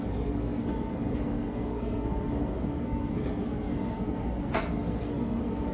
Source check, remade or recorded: remade